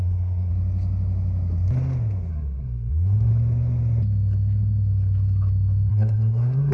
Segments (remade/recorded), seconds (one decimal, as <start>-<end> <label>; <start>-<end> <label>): 0.0-0.5 remade; 0.5-2.3 recorded; 2.3-3.3 remade; 3.3-5.9 recorded; 5.9-6.7 remade